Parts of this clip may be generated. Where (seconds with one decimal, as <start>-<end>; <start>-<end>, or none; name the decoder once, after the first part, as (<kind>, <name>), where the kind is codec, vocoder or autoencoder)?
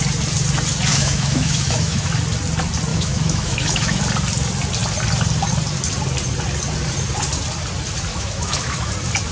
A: 0.9-2.1 (autoencoder, DAC-VAE); 2.9-4.0; 8.1-8.9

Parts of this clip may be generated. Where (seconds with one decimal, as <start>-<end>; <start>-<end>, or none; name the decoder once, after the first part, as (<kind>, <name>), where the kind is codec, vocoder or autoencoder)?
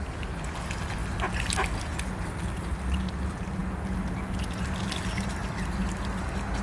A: none